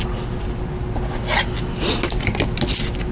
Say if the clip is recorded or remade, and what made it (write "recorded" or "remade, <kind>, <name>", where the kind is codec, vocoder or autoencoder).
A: recorded